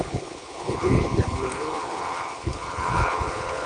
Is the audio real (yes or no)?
no